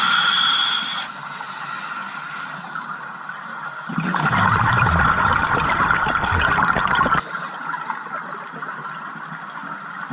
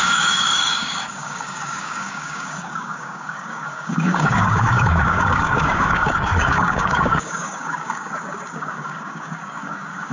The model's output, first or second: second